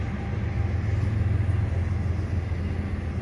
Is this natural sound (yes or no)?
yes